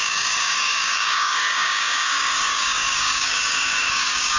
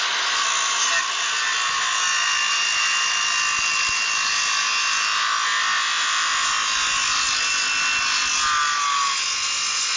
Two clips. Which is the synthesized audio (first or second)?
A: first